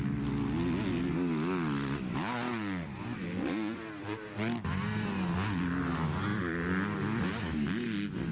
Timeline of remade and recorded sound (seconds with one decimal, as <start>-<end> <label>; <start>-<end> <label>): 0.0-8.3 recorded

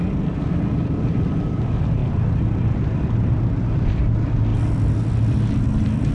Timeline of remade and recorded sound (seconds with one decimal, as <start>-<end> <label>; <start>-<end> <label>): 0.0-6.1 recorded

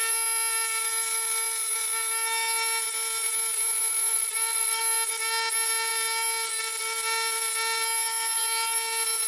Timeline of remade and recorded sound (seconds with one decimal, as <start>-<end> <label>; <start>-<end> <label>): 0.0-4.1 recorded; 4.1-4.8 remade; 4.8-9.3 recorded

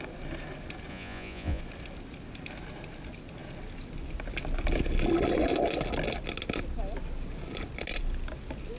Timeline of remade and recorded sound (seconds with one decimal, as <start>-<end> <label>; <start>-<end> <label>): 0.0-0.9 recorded; 0.9-1.6 remade; 1.6-8.8 recorded

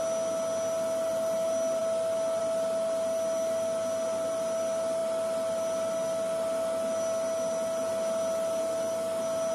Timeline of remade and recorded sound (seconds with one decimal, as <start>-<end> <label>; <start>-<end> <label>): 0.0-9.5 recorded

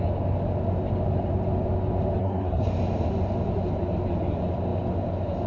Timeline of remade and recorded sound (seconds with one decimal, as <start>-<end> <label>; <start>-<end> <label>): 0.0-2.2 recorded; 2.2-2.7 remade; 2.7-5.5 recorded

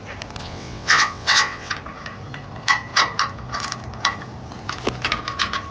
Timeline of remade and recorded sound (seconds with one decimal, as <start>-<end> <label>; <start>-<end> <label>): 0.0-0.4 recorded; 0.4-1.7 remade; 1.7-5.7 recorded